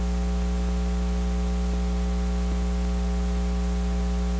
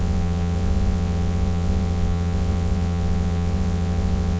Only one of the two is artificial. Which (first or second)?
second